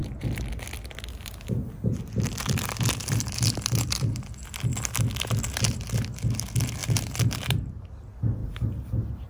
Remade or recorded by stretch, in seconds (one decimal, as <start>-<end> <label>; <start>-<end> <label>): 0.0-0.5 remade; 0.5-1.6 recorded; 1.6-5.4 remade; 5.4-6.8 recorded; 6.8-7.9 remade; 7.9-9.3 recorded